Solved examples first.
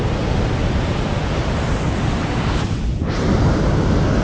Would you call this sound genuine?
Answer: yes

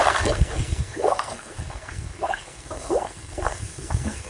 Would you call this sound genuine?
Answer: no